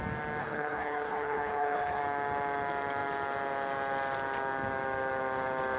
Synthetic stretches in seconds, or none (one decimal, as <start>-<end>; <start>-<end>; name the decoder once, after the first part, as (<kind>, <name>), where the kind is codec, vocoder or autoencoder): 0.4-2.0 (codec, HILCodec)